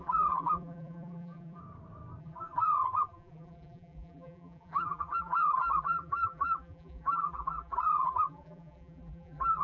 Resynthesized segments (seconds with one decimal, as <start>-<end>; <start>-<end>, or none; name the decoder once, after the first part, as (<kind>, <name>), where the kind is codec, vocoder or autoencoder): 0.0-1.6 (vocoder, BigVGAN v2); 2.2-9.6